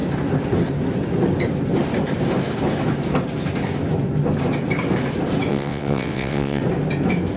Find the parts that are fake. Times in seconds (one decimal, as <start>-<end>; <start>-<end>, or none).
5.5-6.6